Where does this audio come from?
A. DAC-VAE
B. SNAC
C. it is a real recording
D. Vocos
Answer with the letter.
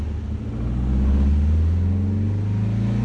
C